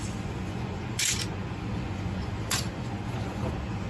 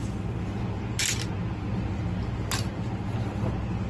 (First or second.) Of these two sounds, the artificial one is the first